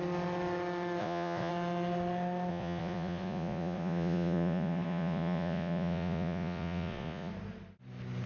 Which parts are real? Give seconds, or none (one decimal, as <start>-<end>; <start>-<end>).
0.0-1.0; 1.5-2.5; 7.3-8.3